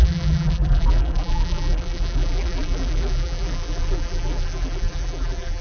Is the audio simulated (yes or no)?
yes